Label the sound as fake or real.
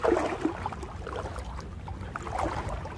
real